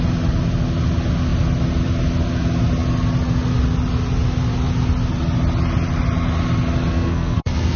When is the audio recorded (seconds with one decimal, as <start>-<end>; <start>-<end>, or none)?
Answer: 0.0-6.9